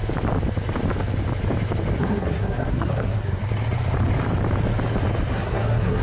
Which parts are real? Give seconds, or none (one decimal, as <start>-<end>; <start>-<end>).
0.0-2.0; 3.4-5.3